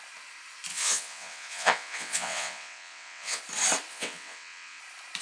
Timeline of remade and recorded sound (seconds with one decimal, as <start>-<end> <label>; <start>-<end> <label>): 0.0-0.7 recorded; 0.7-3.4 remade; 3.4-3.9 recorded; 3.9-4.8 remade; 4.8-5.2 recorded